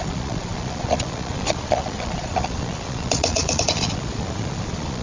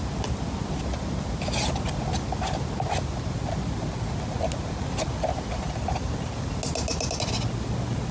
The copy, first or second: first